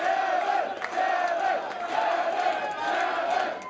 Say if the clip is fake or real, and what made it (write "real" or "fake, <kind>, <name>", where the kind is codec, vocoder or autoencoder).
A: real